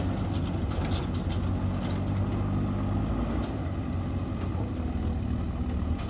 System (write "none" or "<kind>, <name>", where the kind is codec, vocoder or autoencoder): none